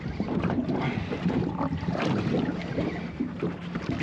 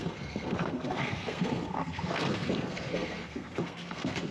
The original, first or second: first